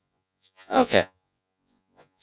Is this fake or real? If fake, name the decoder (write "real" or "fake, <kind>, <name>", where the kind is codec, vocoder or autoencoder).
fake, vocoder, Vocos